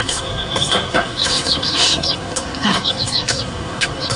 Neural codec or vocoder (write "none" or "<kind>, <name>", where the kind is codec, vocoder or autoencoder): codec, SNAC